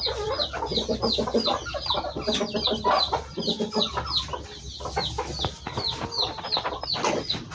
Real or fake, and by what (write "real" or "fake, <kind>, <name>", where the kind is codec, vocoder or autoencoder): real